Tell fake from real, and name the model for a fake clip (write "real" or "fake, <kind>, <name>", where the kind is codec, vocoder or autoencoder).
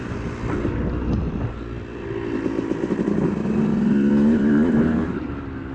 real